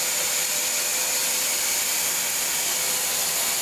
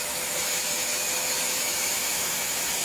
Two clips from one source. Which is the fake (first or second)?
second